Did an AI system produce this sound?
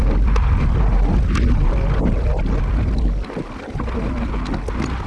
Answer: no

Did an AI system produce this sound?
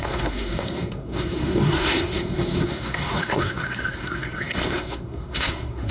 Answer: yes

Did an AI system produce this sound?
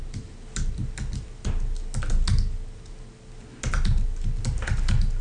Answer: no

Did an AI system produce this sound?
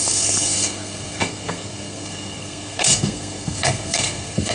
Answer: yes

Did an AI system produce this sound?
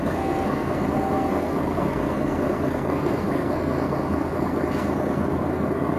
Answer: yes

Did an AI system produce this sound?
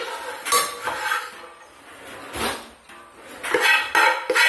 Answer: no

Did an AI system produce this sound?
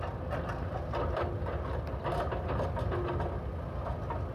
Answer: no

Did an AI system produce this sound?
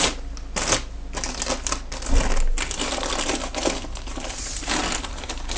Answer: no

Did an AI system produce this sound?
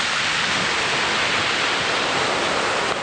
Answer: no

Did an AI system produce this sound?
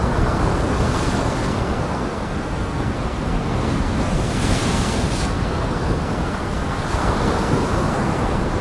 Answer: yes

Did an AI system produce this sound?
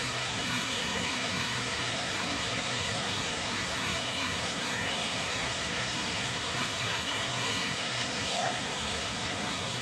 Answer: yes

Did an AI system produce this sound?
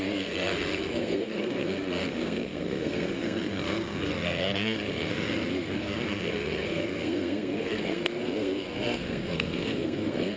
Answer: yes